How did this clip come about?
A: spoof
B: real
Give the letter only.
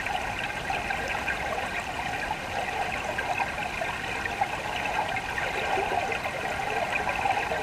B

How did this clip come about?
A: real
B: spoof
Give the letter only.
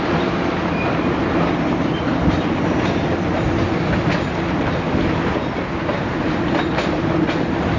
A